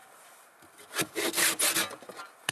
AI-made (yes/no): no